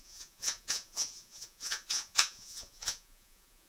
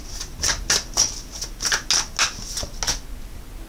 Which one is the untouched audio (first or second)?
second